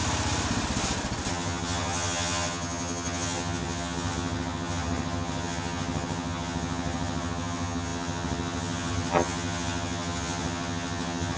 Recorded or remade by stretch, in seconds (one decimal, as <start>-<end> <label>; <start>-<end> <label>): 0.0-1.3 recorded; 1.3-11.4 remade